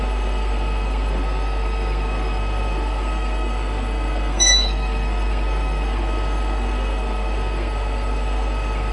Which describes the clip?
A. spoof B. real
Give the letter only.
A